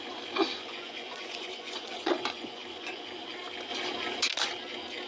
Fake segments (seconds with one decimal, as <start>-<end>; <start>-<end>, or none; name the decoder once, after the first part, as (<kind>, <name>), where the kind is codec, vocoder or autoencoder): 0.5-3.0 (vocoder, Vocos)